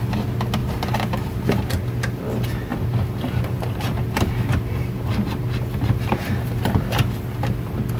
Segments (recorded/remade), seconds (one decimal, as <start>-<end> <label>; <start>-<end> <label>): 0.0-0.6 recorded; 0.6-1.6 remade; 1.6-2.7 recorded; 2.7-6.9 remade; 6.9-8.0 recorded